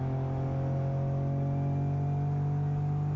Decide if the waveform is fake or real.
real